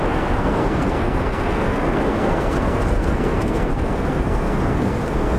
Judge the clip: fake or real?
fake